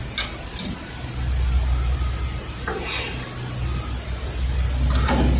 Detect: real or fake real